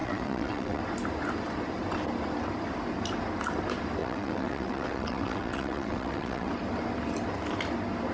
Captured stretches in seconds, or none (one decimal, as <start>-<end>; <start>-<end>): 0.8-4.0; 6.5-8.1